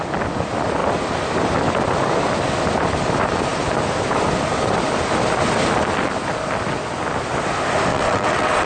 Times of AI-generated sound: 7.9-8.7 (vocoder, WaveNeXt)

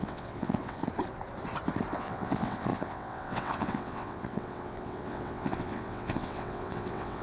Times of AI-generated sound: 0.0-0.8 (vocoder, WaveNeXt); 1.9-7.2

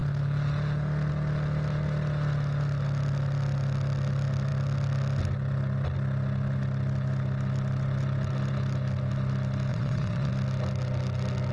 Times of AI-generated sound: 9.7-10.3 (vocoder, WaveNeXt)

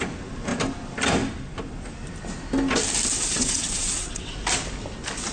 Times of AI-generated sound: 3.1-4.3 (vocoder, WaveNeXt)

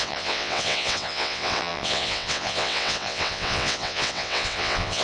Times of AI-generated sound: 0.0-5.0 (vocoder, WaveNeXt)

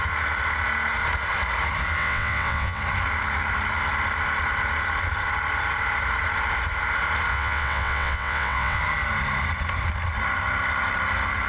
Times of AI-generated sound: 2.0-2.8 (vocoder, WaveNeXt); 7.3-8.8

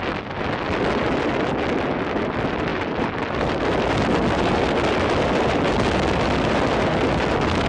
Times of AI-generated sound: none

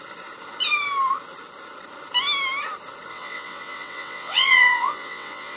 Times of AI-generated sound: 3.1-5.6 (vocoder, WaveNeXt)